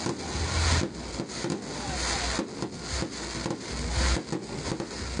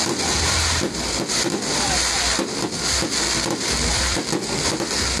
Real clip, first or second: first